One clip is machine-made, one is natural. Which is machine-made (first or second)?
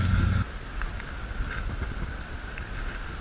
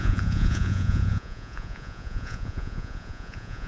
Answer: second